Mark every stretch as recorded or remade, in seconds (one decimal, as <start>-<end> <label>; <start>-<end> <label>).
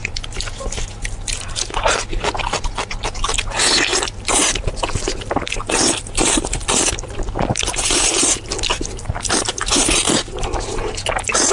0.0-3.9 recorded; 3.9-8.1 remade; 8.1-11.5 recorded